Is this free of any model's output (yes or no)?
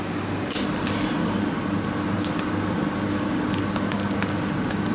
yes